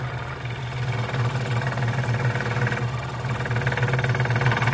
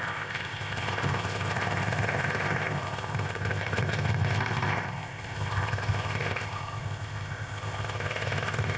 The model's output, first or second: second